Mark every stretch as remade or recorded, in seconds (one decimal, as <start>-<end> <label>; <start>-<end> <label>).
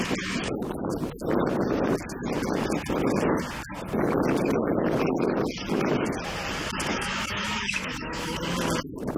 0.0-6.9 recorded; 6.9-8.4 remade; 8.4-9.2 recorded